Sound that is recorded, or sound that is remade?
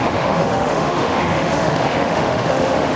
remade